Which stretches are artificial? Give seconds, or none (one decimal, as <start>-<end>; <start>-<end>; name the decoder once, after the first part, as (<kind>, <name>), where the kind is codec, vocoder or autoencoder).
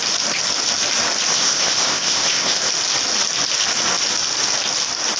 1.3-2.7 (codec, ZipCodec)